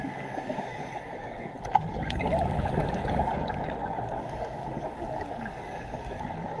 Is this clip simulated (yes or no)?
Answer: yes